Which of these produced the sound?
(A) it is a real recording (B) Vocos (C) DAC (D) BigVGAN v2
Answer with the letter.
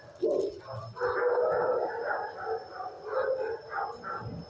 A